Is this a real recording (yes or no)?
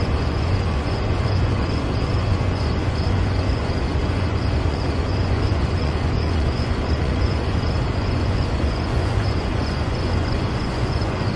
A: no